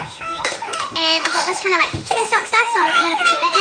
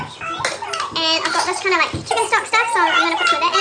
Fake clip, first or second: first